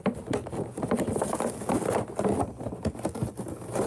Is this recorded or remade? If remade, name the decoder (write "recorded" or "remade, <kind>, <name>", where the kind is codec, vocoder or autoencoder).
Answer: recorded